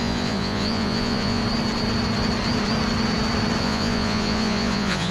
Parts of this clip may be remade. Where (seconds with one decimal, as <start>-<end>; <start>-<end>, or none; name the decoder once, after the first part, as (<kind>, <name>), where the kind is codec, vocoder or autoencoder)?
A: 0.0-1.4 (vocoder, Vocos); 3.6-5.1